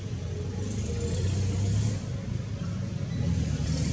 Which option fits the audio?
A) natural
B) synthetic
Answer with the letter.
A